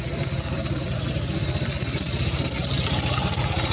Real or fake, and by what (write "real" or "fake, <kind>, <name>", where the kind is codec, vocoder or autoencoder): real